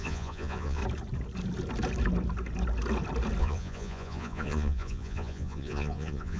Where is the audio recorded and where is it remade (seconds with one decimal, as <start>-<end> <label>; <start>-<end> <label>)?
0.0-0.8 remade; 0.8-3.4 recorded; 3.4-6.4 remade